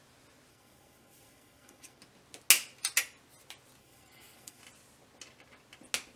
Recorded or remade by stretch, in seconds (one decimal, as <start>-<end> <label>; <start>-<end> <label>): 0.0-0.5 recorded; 0.5-2.0 remade; 2.0-3.8 recorded; 3.8-4.6 remade; 4.6-6.2 recorded